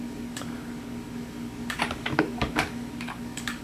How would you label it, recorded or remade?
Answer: remade